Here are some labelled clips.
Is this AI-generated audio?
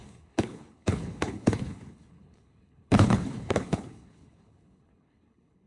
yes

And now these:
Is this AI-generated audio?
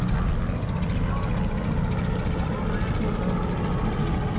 no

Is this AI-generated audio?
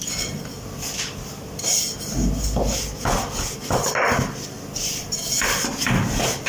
no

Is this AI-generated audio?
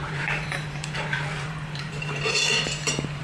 yes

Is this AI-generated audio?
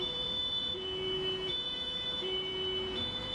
yes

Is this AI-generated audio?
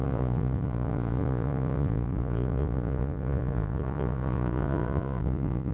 yes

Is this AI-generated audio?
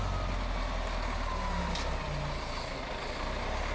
no